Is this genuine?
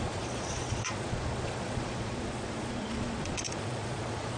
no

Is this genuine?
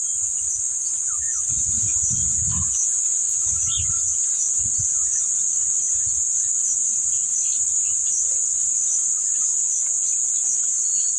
yes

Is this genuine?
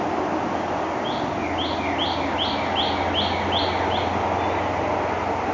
yes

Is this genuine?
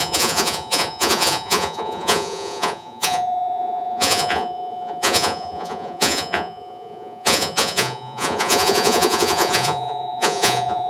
no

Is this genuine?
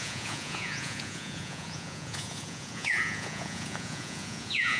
no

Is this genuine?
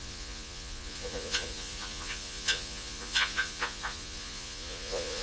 no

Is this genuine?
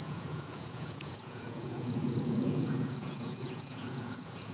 no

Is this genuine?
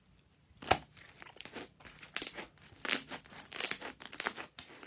yes